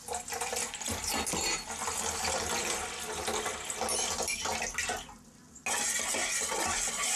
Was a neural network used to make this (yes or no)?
no